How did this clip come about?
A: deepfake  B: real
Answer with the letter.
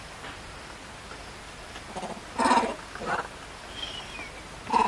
B